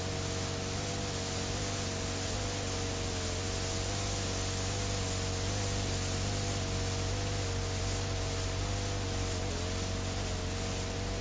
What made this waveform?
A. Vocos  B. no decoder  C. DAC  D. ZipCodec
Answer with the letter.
B